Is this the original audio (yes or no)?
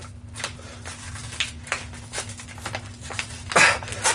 yes